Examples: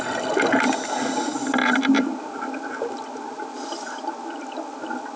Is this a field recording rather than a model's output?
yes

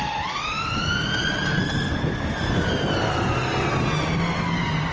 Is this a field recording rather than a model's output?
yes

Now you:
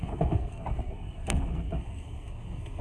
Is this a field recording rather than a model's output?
no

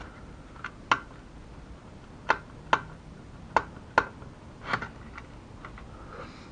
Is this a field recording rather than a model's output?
yes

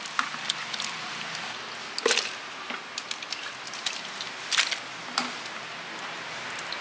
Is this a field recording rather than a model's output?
yes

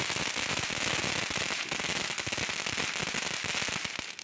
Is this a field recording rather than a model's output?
yes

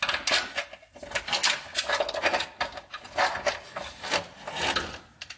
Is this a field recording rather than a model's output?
yes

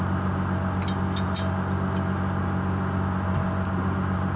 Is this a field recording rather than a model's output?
yes